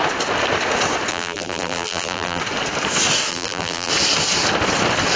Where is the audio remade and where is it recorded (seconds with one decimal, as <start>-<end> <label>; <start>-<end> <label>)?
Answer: 0.0-1.1 recorded; 1.1-2.4 remade; 2.4-3.3 recorded; 3.3-3.9 remade; 3.9-5.2 recorded